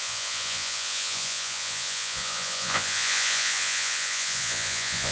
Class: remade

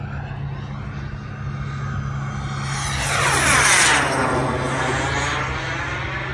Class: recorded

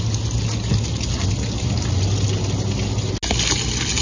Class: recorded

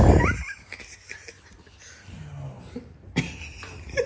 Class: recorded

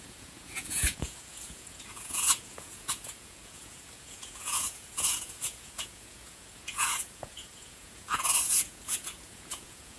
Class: remade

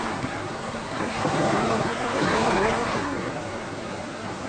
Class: remade